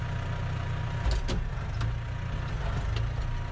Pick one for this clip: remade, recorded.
recorded